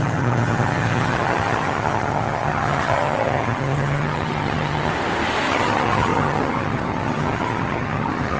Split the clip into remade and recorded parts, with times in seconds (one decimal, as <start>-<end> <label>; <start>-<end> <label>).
0.0-4.9 remade; 4.9-5.5 recorded; 5.5-8.4 remade